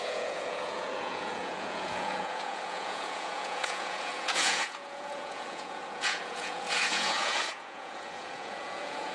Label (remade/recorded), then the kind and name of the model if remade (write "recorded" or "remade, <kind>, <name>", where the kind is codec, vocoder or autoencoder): remade, vocoder, Vocos